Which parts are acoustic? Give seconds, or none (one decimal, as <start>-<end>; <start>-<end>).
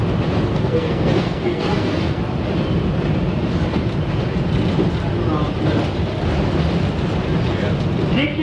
0.0-0.5; 2.2-8.4